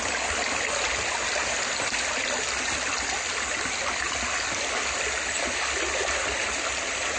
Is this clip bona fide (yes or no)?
yes